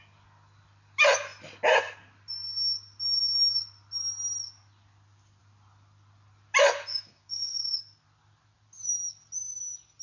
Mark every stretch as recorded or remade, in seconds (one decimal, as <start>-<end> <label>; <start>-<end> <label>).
0.0-6.9 recorded; 6.9-7.8 remade; 7.8-10.0 recorded